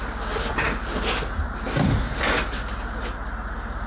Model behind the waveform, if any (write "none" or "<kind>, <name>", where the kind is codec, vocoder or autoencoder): none